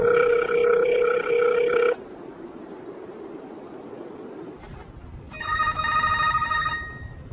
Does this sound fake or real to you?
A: fake